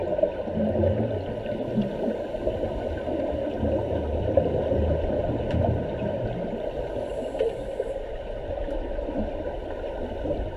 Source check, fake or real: real